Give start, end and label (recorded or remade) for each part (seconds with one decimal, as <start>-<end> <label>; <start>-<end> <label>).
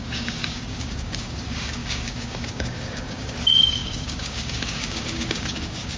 0.0-6.0 remade